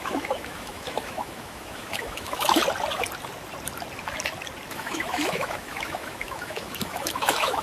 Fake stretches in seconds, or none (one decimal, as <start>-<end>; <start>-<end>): 0.0-2.6; 4.7-7.6